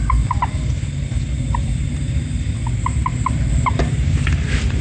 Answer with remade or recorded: recorded